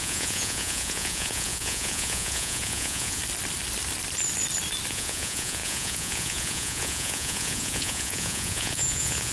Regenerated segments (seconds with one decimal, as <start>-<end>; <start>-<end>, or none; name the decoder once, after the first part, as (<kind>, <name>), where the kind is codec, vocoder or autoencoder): 0.0-3.2 (vocoder, Vocos); 4.9-9.3